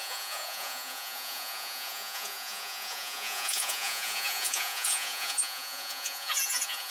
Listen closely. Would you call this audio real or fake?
fake